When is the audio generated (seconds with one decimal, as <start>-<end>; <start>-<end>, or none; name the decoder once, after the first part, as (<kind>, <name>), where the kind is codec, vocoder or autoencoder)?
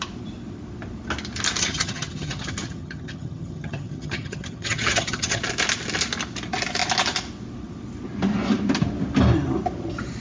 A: 1.6-5.4 (vocoder, HiFi-GAN)